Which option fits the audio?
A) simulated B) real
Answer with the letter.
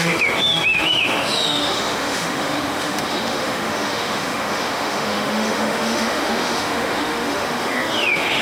A